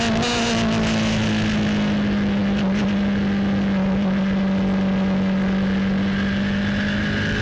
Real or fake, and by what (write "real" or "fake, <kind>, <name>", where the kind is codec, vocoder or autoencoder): real